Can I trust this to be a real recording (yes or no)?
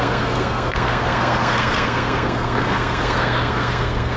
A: no